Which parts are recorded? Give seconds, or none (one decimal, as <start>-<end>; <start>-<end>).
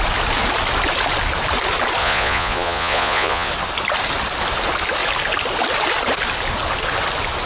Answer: 0.0-2.0; 3.5-7.5